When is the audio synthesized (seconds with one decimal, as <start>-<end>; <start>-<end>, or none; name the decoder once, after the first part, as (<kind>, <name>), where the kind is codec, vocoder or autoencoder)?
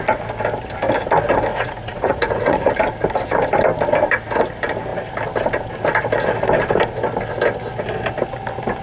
1.5-2.7 (vocoder, Vocos)